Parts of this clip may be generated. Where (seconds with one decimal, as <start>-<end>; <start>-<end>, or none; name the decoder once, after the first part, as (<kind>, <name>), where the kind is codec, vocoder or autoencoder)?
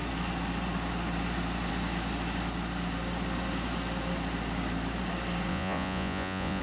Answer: 5.5-6.6 (vocoder, Vocos)